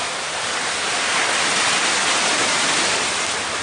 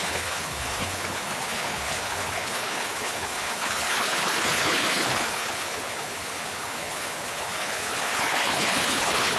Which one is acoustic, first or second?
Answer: first